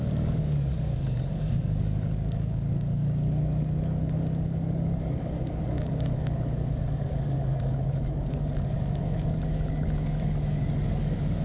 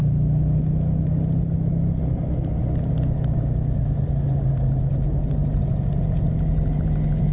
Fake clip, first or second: first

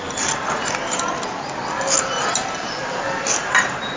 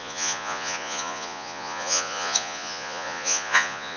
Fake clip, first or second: second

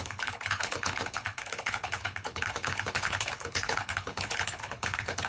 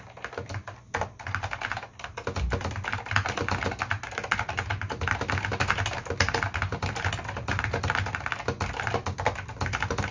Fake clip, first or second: first